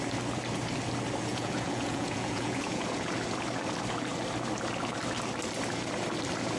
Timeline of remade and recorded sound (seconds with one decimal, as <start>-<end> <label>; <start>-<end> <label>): 0.0-1.3 recorded; 1.3-3.1 remade; 3.1-6.6 recorded

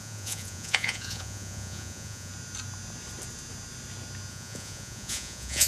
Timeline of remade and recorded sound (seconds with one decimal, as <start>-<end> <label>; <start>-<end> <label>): 0.0-2.3 remade; 2.3-4.3 recorded; 4.3-5.7 remade

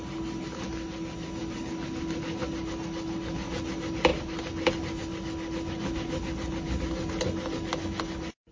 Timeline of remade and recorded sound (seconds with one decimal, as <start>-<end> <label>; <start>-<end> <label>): 0.0-8.5 recorded

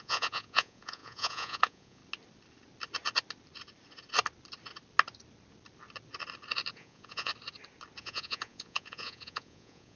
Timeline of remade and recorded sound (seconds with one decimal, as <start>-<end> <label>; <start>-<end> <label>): 0.0-2.0 remade; 2.0-6.7 recorded; 6.7-7.3 remade; 7.3-8.0 recorded; 8.0-10.0 remade